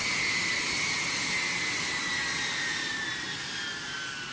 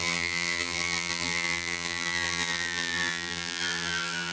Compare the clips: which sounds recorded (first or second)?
first